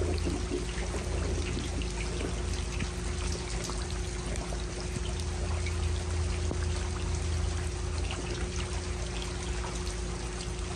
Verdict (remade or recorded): recorded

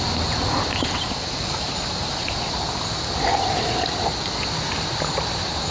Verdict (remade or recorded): remade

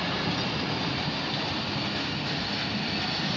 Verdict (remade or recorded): recorded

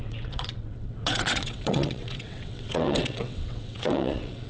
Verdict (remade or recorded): remade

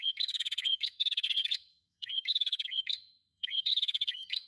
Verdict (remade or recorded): remade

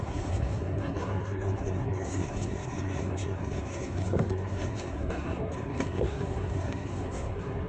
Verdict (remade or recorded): remade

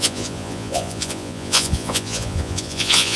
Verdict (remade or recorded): remade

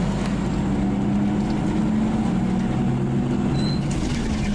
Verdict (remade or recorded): recorded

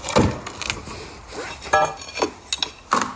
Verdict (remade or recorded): recorded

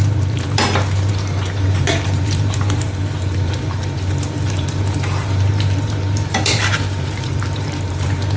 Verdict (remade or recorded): remade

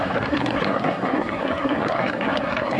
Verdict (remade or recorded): remade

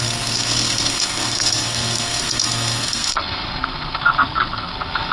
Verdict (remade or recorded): remade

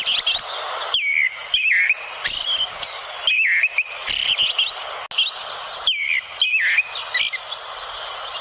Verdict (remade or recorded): recorded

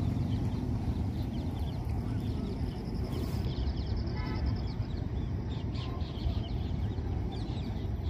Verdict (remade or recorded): remade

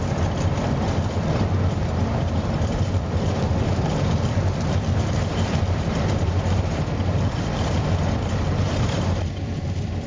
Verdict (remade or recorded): remade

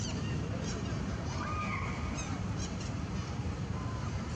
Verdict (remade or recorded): remade